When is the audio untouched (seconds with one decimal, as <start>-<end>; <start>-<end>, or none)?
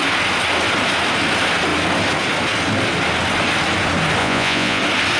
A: 0.0-4.2; 4.8-5.2